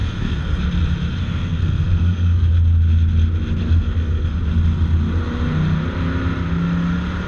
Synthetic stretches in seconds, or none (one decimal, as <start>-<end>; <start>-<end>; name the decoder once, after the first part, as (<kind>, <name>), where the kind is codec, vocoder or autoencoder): 0.0-0.6 (codec, SNAC); 1.2-2.5; 3.6-4.4